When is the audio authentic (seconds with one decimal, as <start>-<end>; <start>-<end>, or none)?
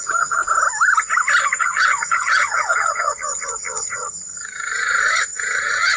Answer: 0.4-1.6; 3.1-3.9